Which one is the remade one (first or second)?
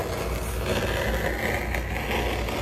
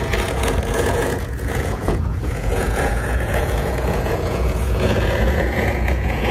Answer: second